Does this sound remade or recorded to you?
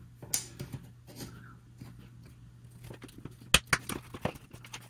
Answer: recorded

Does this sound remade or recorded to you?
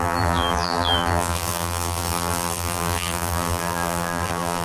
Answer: remade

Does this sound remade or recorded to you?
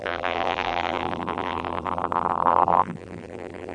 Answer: remade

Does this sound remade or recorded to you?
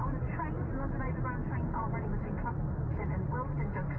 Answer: recorded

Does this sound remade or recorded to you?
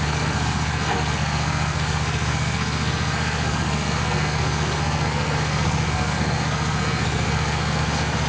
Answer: remade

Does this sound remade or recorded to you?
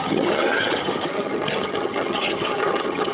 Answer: remade